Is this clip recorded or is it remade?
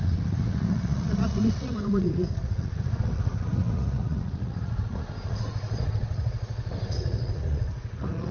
remade